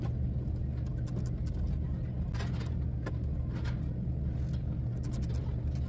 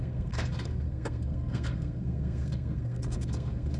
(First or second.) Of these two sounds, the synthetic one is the second